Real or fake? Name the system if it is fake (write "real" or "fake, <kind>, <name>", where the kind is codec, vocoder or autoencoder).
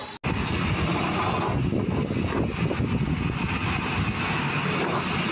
real